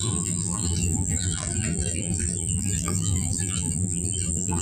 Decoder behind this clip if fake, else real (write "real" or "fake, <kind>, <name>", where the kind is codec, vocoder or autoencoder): fake, vocoder, BigVGAN v2